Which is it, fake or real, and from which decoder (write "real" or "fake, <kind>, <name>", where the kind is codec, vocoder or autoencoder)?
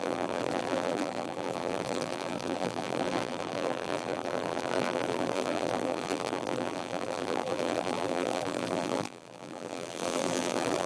fake, vocoder, BigVGAN v2